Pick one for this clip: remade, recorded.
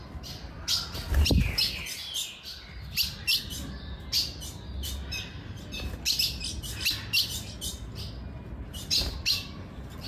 recorded